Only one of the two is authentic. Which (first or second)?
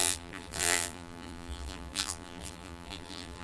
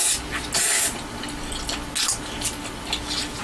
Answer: second